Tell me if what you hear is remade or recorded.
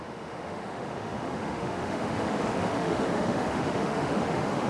remade